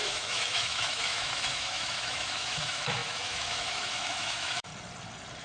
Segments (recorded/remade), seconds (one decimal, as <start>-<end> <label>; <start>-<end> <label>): 0.0-4.7 remade; 4.7-5.4 recorded